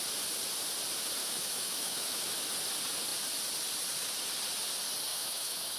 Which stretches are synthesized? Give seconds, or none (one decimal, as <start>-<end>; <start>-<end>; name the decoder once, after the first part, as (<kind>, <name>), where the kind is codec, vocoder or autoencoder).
1.2-2.3 (autoencoder, DAC-VAE); 5.1-5.8